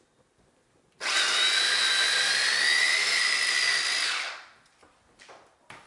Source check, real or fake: real